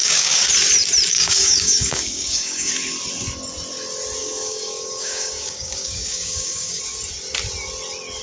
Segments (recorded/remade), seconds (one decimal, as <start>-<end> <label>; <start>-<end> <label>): 0.0-0.5 remade; 0.5-1.1 recorded; 1.1-2.7 remade; 2.7-4.2 recorded; 4.2-6.8 remade; 6.8-8.2 recorded

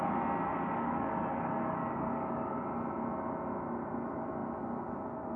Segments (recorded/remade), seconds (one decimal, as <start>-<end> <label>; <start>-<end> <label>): 0.0-0.5 recorded; 0.5-2.6 remade; 2.6-5.4 recorded

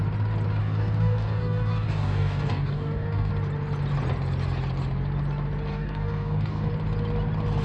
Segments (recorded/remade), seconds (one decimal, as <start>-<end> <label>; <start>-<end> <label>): 0.0-0.6 recorded; 0.6-3.3 remade; 3.3-5.7 recorded; 5.7-6.7 remade; 6.7-7.6 recorded

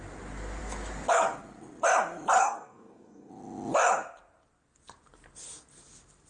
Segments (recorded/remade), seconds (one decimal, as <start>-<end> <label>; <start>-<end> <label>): 0.0-2.4 recorded; 2.4-3.3 remade; 3.3-6.3 recorded

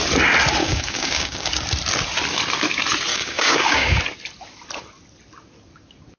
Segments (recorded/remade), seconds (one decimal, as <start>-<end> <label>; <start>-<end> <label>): 0.0-0.6 recorded; 0.6-1.5 remade; 1.5-3.1 recorded; 3.1-4.0 remade; 4.0-6.2 recorded

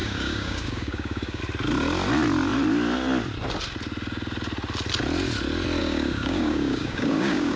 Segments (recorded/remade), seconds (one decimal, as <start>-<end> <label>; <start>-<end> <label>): 0.0-1.4 remade; 1.4-5.8 recorded; 5.8-7.6 remade